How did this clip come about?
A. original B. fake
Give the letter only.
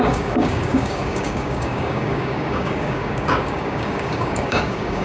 B